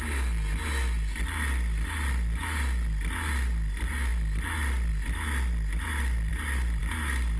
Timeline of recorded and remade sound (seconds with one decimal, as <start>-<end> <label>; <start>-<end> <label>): 0.0-7.4 recorded